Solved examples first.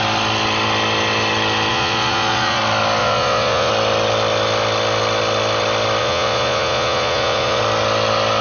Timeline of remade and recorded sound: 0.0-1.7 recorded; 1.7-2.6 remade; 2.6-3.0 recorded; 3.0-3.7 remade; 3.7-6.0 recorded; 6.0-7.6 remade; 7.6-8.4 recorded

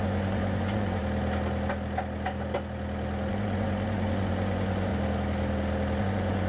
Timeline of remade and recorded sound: 0.0-1.0 remade; 1.0-3.3 recorded; 3.3-4.9 remade; 4.9-6.0 recorded; 6.0-6.5 remade

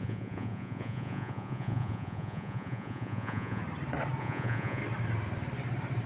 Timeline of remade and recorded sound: 0.0-3.6 remade; 3.6-4.2 recorded; 4.2-4.8 remade; 4.8-6.1 recorded

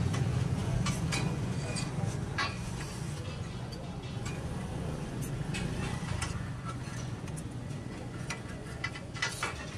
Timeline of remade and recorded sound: 0.0-9.8 remade